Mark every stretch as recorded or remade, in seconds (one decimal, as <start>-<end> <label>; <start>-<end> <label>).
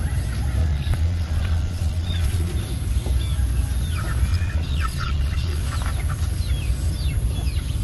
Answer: 0.0-0.6 recorded; 0.6-2.5 remade; 2.5-4.3 recorded; 4.3-5.6 remade; 5.6-7.8 recorded